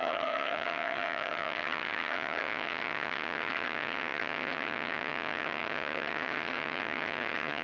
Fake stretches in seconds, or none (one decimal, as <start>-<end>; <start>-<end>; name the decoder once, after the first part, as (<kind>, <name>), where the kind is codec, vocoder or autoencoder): 0.0-7.6 (vocoder, HiFi-GAN)